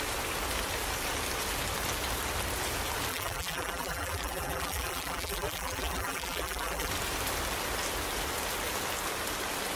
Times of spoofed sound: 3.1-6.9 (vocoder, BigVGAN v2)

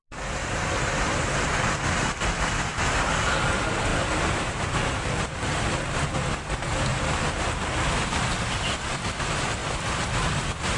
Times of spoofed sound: 0.4-1.7 (vocoder, BigVGAN v2); 3.9-6.3; 6.9-8.3

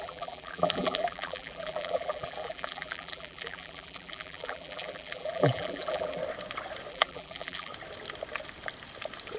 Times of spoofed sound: 0.0-6.2 (vocoder, BigVGAN v2); 6.9-7.7

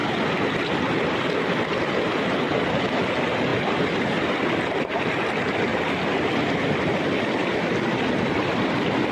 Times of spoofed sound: none

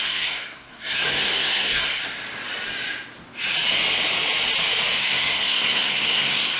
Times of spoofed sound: 0.0-2.0 (codec, SNAC); 5.0-6.6